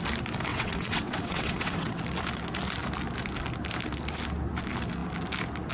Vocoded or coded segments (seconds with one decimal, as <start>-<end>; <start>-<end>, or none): 0.5-2.0